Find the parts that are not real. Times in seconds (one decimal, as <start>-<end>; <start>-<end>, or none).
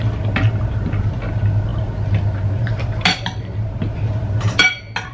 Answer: none